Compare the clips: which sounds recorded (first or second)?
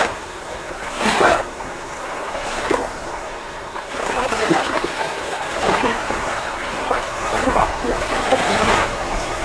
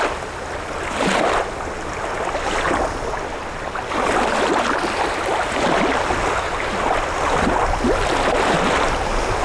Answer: second